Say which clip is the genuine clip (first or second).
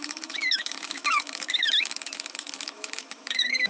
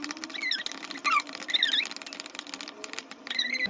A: second